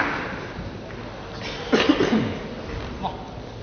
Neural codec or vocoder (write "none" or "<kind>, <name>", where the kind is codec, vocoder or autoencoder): none